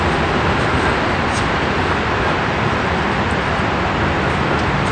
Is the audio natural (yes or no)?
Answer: yes